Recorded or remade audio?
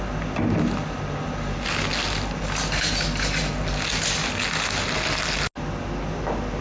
recorded